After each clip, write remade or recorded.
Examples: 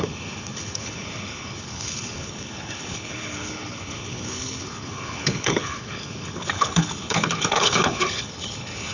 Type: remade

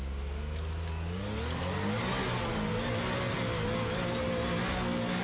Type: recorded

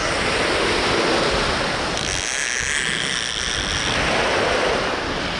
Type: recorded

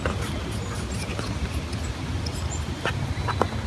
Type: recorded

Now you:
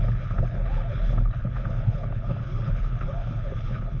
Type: remade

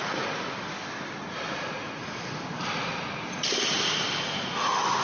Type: recorded